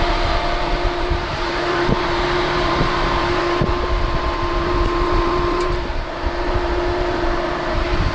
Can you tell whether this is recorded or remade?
remade